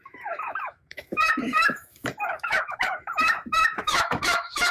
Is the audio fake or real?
fake